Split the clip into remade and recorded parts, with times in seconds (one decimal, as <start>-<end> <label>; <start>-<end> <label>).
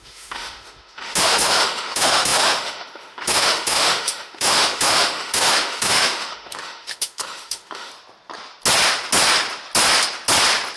0.0-7.9 remade; 7.9-10.8 recorded